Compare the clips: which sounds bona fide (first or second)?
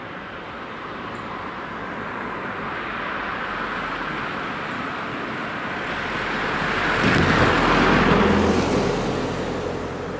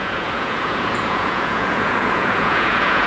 first